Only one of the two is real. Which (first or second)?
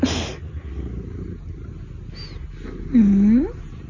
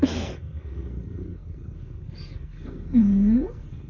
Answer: first